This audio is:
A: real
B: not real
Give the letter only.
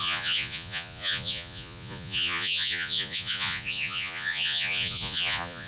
B